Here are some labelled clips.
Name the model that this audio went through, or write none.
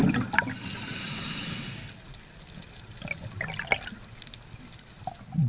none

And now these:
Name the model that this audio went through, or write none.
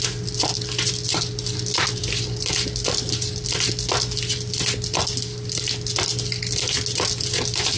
none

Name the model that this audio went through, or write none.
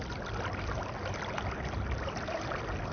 none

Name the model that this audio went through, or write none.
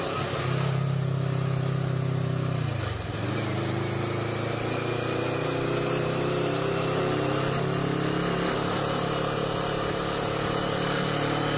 none